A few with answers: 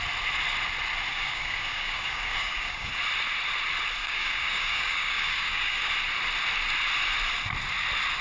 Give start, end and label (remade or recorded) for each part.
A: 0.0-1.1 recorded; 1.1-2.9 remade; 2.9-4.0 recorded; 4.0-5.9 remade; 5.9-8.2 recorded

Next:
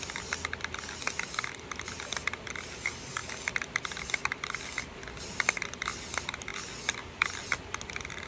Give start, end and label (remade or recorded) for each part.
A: 0.0-8.3 recorded